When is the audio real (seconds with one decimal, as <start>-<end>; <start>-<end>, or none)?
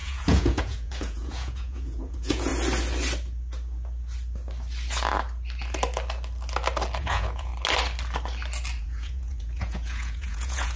2.5-7.0; 7.5-8.8